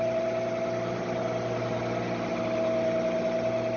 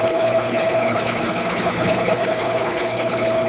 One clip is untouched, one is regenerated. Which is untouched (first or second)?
first